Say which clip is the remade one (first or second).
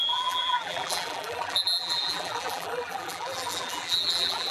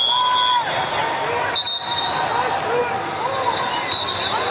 first